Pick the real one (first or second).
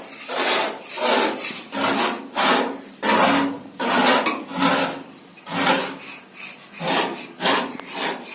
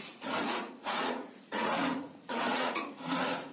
first